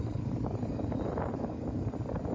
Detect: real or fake real